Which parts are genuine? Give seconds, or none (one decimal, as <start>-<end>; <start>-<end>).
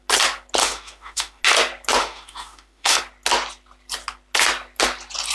0.0-0.6; 1.4-2.0; 3.0-5.3